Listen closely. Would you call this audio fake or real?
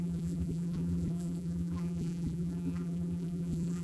fake